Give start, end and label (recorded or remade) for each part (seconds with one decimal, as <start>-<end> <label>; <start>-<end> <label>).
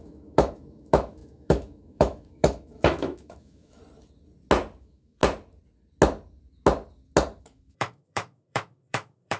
0.0-3.8 remade; 3.8-4.8 recorded; 4.8-5.2 remade; 5.2-7.4 recorded; 7.4-9.4 remade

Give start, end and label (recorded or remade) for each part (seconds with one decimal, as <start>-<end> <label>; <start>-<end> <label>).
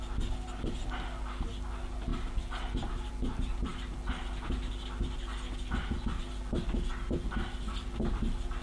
0.0-8.6 recorded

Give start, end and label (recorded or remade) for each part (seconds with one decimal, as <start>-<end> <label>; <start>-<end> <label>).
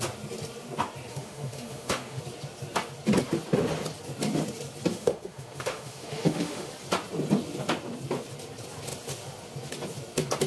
0.0-1.1 recorded; 1.1-2.2 remade; 2.2-4.9 recorded; 4.9-6.7 remade; 6.7-10.5 recorded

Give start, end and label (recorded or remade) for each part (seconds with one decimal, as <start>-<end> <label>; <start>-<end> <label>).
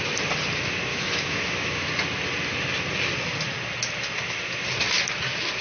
0.0-0.9 recorded; 0.9-1.9 remade; 1.9-5.6 recorded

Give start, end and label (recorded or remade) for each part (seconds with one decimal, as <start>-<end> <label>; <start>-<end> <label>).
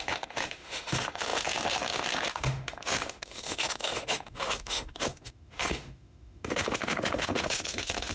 0.0-8.1 remade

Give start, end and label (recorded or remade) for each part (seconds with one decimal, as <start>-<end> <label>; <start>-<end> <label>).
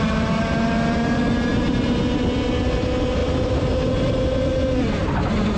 0.0-5.6 recorded